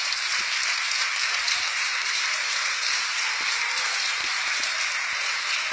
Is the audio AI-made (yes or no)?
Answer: yes